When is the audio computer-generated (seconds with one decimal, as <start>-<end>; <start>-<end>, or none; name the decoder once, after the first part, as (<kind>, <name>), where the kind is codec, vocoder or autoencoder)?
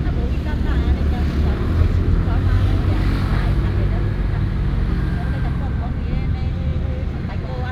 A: none